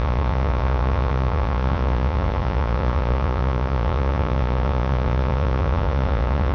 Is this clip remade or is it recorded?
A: remade